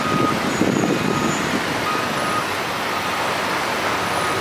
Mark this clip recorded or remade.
recorded